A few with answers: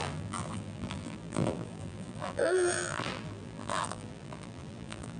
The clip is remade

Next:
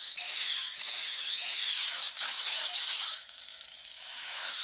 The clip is remade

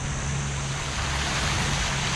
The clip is recorded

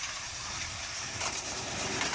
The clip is remade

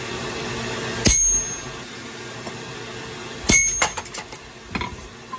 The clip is recorded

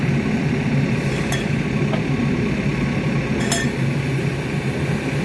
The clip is recorded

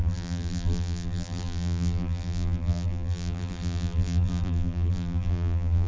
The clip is remade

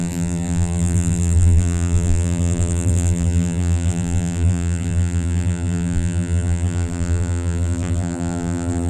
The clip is remade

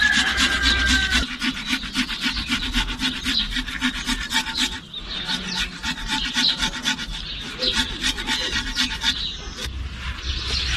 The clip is recorded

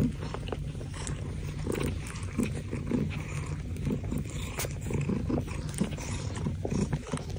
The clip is recorded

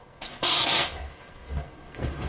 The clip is remade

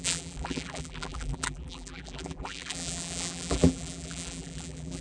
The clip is remade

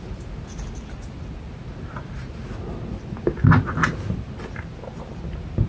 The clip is recorded